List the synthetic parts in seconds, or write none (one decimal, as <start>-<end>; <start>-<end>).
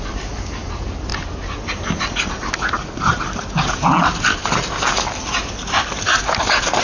0.0-1.1; 2.3-3.1; 6.2-6.8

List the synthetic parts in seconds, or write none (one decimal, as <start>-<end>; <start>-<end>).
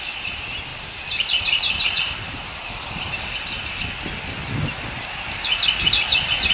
0.7-3.7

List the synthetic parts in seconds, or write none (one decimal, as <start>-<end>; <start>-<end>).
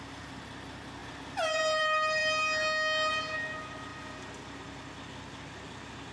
0.0-2.2; 3.3-3.9